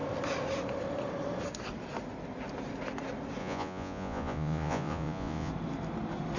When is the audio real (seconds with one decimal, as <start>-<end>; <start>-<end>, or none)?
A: 0.0-3.4; 5.5-6.4